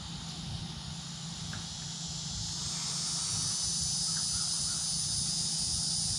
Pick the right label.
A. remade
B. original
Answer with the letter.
B